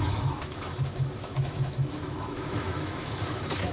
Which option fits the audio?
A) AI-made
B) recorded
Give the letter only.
A